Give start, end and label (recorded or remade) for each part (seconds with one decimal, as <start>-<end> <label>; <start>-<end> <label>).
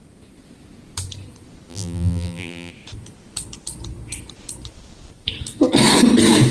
0.0-1.7 recorded; 1.7-2.7 remade; 2.7-6.5 recorded